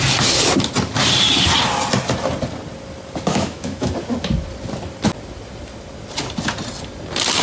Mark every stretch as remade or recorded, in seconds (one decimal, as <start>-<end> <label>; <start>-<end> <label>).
0.0-3.3 recorded; 3.3-3.9 remade; 3.9-7.4 recorded